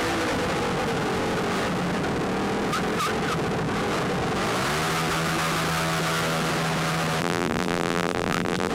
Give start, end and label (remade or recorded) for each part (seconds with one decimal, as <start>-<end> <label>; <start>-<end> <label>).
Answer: 0.0-7.2 recorded; 7.2-8.7 remade